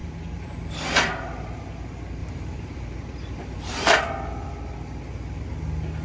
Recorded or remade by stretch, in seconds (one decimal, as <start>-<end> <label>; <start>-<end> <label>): 0.0-1.6 remade; 1.6-2.2 recorded; 2.2-4.0 remade; 4.0-6.0 recorded